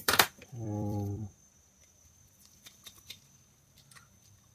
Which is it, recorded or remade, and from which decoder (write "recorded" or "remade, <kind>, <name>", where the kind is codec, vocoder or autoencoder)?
remade, vocoder, BigVGAN v2